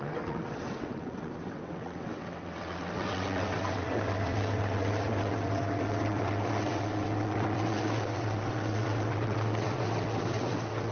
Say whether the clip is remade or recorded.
remade